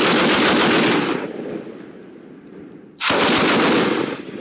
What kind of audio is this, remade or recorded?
recorded